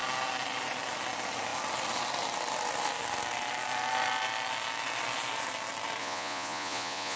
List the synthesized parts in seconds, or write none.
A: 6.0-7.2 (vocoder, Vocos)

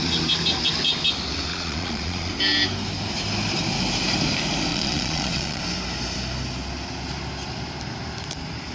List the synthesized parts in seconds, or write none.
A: 1.5-2.3 (vocoder, Vocos); 4.7-5.6

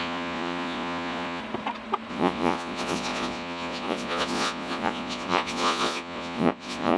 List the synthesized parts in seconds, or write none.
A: 0.0-1.4 (vocoder, Vocos); 2.1-7.0

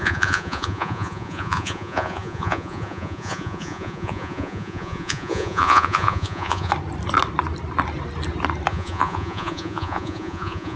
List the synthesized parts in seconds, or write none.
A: 0.0-6.7 (vocoder, Vocos); 8.7-10.8

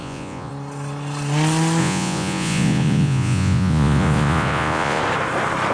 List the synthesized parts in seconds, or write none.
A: 0.0-0.5 (vocoder, Vocos); 1.8-5.0

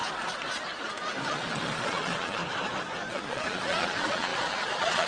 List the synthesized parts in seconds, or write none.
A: 1.3-2.4 (vocoder, Vocos); 3.1-5.1

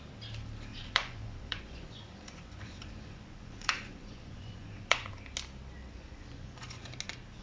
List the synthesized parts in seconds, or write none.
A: 0.7-5.1 (vocoder, Vocos); 5.8-6.8